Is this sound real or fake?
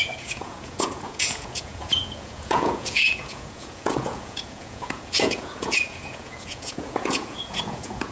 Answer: fake